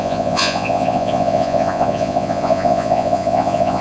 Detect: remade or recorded remade